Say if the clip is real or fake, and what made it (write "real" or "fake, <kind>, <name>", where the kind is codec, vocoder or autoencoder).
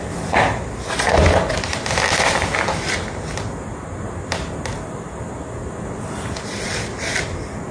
real